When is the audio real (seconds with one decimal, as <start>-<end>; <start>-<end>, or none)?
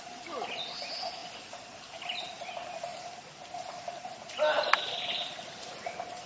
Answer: 0.0-6.3